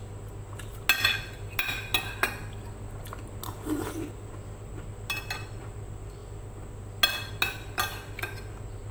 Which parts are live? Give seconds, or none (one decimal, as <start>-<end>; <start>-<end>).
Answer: 0.0-8.9